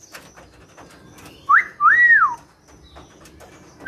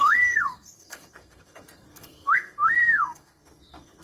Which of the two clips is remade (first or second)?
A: second